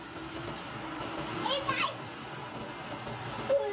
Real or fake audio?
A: real